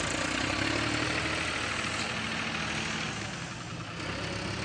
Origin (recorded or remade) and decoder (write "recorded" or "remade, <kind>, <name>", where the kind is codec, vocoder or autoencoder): recorded